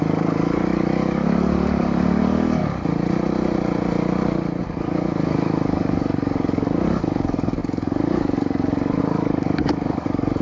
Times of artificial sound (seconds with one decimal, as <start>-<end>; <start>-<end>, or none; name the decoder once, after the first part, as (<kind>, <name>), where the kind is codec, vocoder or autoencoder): 0.0-2.6 (codec, DAC); 4.8-10.4